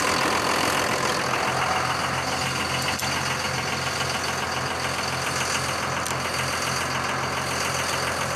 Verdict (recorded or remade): recorded